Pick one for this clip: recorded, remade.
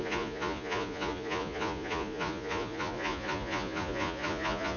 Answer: remade